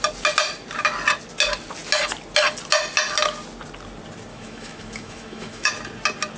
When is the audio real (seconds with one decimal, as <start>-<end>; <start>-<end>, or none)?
0.0-4.3; 5.7-6.4